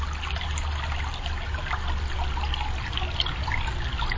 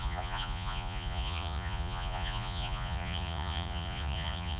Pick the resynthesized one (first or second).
second